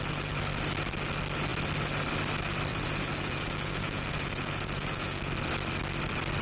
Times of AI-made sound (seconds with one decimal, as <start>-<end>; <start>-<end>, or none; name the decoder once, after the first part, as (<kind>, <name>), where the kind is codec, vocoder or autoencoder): 2.7-5.3 (vocoder, Vocos)